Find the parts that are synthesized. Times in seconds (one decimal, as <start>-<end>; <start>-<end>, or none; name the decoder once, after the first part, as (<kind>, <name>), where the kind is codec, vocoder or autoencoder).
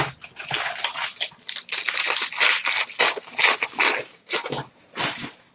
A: 4.1-4.7 (codec, DAC)